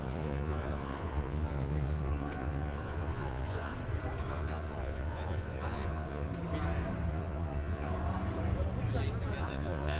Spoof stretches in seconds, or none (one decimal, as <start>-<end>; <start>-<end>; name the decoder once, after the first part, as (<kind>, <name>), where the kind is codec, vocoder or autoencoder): 0.0-3.7 (vocoder, Vocos); 4.3-6.3; 7.1-7.9; 9.4-10.0

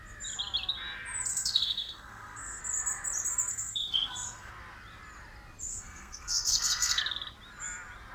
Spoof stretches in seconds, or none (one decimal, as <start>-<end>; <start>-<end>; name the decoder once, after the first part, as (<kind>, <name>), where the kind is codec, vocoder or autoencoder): 1.3-2.6 (codec, SNAC); 3.5-4.5; 5.7-7.0

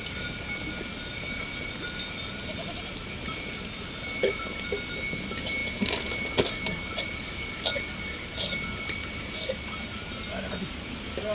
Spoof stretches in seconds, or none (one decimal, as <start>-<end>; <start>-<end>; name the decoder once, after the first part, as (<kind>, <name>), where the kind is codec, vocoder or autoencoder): none

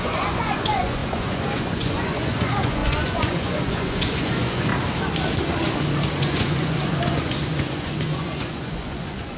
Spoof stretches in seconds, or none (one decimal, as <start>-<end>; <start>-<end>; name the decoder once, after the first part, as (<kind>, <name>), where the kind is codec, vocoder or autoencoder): 0.0-4.7 (vocoder, Vocos); 6.1-9.4

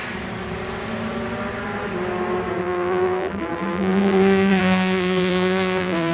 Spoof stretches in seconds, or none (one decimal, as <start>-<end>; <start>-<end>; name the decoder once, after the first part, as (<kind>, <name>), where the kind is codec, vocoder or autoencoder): 2.6-6.1 (vocoder, BigVGAN v2)